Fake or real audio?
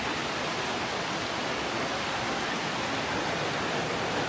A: real